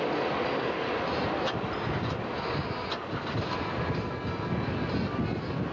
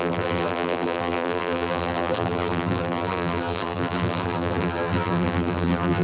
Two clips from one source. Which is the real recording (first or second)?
first